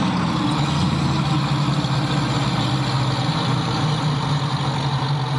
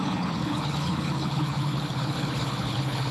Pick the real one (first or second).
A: first